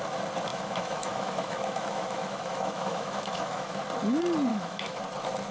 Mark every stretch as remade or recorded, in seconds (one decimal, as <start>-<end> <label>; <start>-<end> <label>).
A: 0.0-0.5 recorded; 0.5-3.8 remade; 3.8-4.5 recorded; 4.5-5.0 remade; 5.0-5.5 recorded